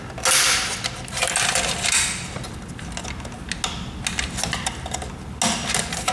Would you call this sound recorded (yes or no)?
yes